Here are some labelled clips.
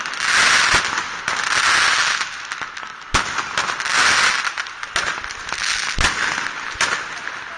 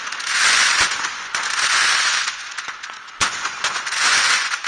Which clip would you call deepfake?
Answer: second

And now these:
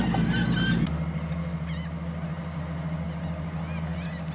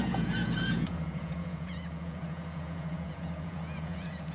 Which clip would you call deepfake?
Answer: second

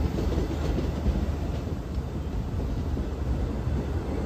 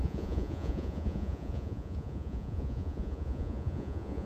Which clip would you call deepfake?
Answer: second